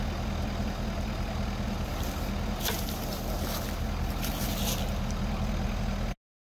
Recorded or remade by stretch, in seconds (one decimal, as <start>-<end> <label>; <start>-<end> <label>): 0.0-6.5 recorded